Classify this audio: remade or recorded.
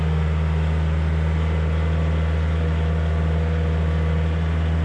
recorded